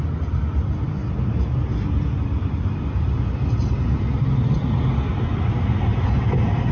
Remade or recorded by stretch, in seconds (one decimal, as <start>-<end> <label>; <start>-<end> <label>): 0.0-6.7 recorded